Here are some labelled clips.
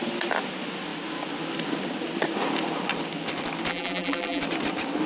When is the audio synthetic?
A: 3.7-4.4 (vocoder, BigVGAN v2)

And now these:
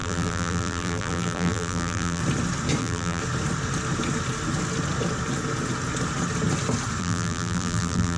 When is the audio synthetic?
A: 0.0-2.2 (vocoder, BigVGAN v2); 2.8-3.2; 7.0-8.2

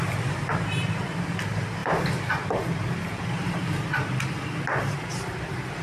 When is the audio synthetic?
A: none